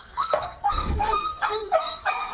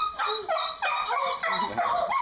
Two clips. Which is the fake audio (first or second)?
first